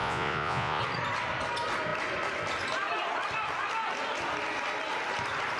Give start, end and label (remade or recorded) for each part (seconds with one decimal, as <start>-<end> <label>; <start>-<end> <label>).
0.0-0.8 remade; 0.8-5.6 recorded